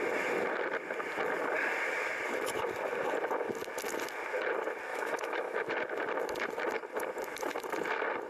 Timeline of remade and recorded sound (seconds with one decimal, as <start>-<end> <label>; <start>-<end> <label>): 0.0-4.9 recorded; 4.9-5.7 remade; 5.7-8.3 recorded